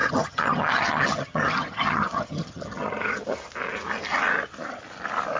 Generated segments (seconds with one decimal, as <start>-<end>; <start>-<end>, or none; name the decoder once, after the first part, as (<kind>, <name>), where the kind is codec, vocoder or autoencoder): 0.0-3.2 (vocoder, HiFi-GAN)